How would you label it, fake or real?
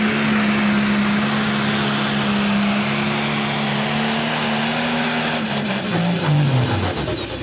real